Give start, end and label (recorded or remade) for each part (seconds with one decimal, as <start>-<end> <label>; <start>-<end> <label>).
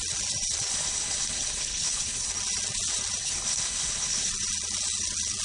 0.0-0.7 recorded; 0.7-2.3 remade; 2.3-3.2 recorded; 3.2-4.3 remade; 4.3-5.4 recorded